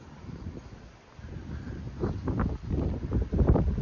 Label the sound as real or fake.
real